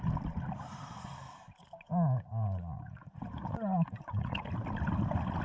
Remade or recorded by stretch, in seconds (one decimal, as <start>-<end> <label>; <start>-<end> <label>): 0.0-2.3 recorded; 2.3-4.4 remade; 4.4-5.4 recorded